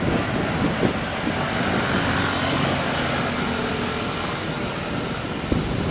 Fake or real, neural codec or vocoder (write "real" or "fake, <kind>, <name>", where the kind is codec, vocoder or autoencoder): real